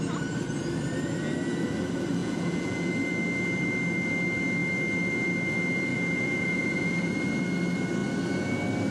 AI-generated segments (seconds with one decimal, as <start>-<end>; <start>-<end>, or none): 2.2-2.9; 5.9-7.1